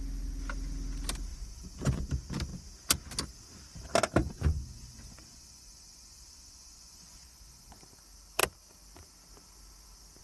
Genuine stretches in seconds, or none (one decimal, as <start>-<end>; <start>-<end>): 0.0-1.3; 2.1-4.2; 7.8-10.2